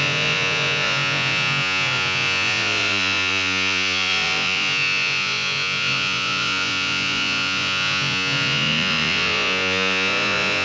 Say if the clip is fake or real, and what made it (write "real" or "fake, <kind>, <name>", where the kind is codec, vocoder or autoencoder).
fake, vocoder, Vocos